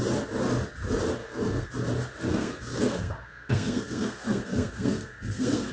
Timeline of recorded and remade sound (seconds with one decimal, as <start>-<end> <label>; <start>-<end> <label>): 0.0-1.2 recorded; 1.2-1.7 remade; 1.7-2.3 recorded; 2.3-5.7 remade